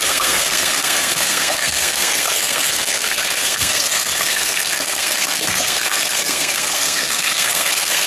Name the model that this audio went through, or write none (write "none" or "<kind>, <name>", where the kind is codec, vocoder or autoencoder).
codec, SNAC